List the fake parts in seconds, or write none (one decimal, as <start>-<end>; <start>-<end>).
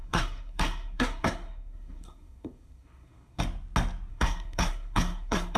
0.0-3.4; 4.1-5.6